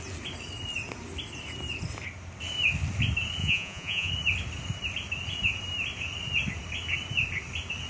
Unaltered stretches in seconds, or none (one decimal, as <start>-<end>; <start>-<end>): 0.0-3.4; 4.1-7.9